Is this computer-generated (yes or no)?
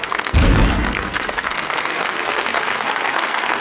yes